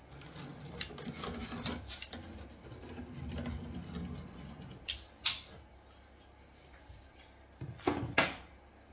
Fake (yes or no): no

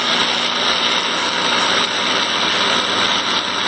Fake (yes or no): no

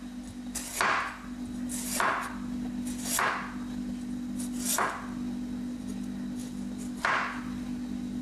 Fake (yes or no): no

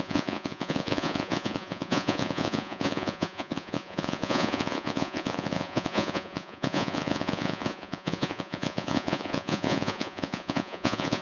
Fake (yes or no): yes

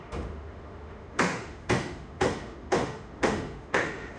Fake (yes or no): yes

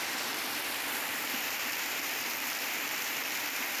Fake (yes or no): yes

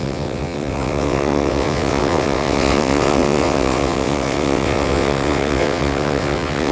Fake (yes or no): yes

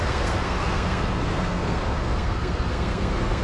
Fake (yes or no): yes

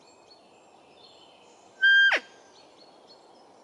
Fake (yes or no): no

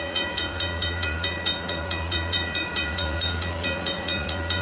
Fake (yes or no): yes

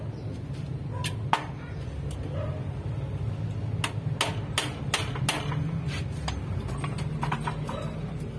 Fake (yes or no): no